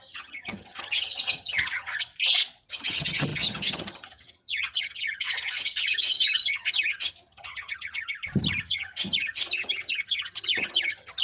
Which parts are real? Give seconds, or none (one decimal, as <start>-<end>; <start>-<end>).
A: 2.1-2.7; 8.1-8.6